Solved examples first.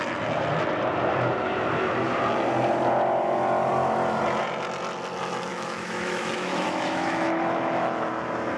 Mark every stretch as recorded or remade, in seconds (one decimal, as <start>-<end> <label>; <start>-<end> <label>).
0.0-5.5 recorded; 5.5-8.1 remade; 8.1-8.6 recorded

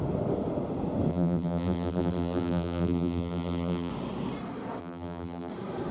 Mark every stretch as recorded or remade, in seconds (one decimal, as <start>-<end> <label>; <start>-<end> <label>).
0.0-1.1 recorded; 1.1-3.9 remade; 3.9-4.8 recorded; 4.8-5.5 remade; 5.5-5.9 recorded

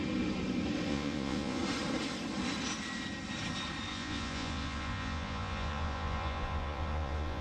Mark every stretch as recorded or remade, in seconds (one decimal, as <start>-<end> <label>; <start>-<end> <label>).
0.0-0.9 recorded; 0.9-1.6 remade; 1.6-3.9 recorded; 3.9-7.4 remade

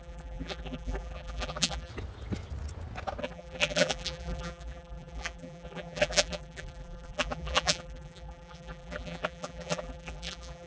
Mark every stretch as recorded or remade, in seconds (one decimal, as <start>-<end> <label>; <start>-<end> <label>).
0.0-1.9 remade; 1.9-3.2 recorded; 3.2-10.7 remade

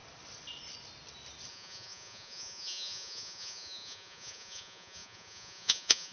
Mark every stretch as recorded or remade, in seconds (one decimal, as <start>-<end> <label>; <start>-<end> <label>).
0.0-1.5 recorded; 1.5-6.1 remade

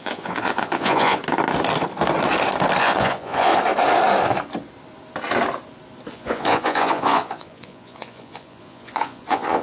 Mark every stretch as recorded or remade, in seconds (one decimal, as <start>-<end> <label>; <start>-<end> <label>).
0.0-1.2 remade; 1.2-2.8 recorded; 2.8-3.5 remade; 3.5-6.1 recorded; 6.1-9.6 remade

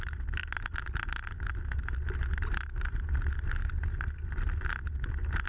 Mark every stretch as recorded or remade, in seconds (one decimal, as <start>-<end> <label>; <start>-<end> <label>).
0.0-5.5 recorded

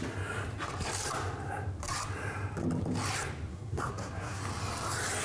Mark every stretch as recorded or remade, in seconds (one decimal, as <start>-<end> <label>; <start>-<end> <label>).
0.0-3.5 recorded; 3.5-4.4 remade; 4.4-5.2 recorded